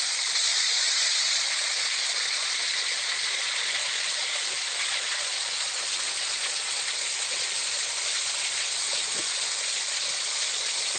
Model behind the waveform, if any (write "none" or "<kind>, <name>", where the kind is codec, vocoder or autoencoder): vocoder, Vocos